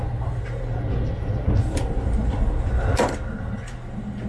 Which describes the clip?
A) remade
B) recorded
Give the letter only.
B